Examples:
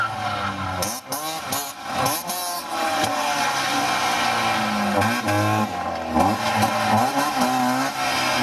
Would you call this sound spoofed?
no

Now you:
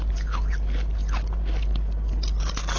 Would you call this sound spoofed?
no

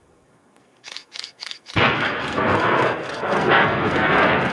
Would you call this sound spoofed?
yes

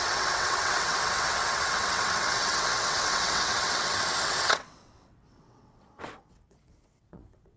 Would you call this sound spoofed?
yes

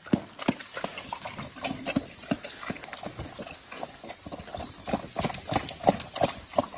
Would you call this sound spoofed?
no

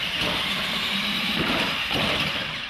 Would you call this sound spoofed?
yes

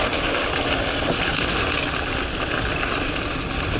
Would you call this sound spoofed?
no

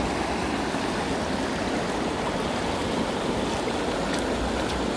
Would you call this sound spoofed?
no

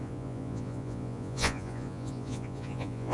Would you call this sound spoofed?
yes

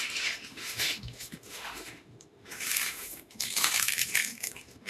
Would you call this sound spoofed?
yes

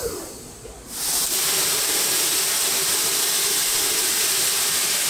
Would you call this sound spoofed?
no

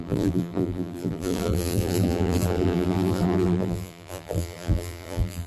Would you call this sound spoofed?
yes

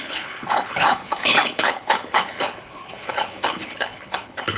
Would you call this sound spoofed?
yes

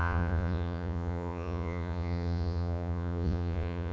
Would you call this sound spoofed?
yes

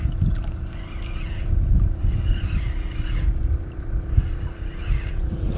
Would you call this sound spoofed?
no